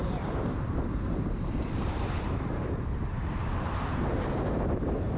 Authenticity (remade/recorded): remade